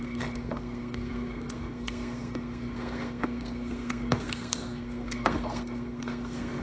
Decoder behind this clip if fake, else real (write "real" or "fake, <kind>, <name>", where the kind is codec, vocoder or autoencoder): fake, codec, SNAC